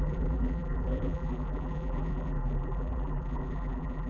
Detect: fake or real fake